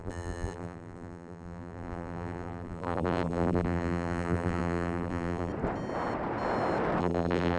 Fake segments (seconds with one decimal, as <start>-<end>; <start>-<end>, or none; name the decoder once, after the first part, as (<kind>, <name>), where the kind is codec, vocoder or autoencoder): 0.0-5.5 (vocoder, BigVGAN v2); 7.0-7.6